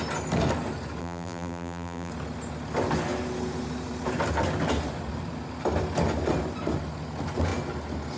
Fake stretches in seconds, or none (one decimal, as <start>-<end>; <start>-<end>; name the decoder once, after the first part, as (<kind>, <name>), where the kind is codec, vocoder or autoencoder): 1.0-2.1 (vocoder, BigVGAN v2)